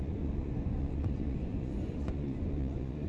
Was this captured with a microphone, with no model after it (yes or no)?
no